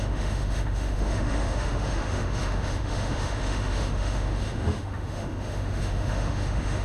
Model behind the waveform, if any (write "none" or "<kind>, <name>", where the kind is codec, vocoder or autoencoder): autoencoder, DAC-VAE